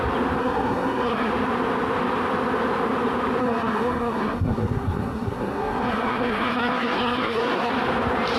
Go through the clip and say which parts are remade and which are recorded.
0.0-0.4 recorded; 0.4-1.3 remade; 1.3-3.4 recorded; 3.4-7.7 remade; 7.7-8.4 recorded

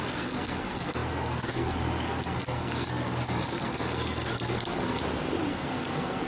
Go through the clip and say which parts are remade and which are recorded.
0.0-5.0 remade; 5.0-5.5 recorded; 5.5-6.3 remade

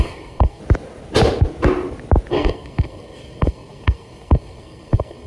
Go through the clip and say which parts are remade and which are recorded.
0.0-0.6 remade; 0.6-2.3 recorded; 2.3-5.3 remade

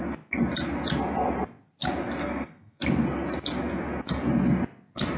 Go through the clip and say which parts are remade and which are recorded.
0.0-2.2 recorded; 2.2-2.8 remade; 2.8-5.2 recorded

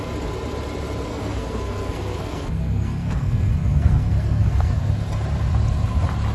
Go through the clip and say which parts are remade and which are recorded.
0.0-1.1 recorded; 1.1-4.9 remade; 4.9-6.3 recorded

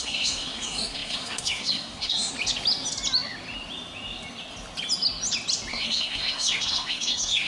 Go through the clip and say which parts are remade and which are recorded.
0.0-2.3 remade; 2.3-5.7 recorded; 5.7-7.5 remade

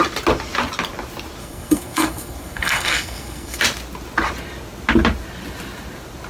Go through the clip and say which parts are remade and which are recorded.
0.0-1.4 recorded; 1.4-3.6 remade; 3.6-6.3 recorded